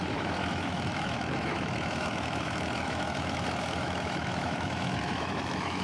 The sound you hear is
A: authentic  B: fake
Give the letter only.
B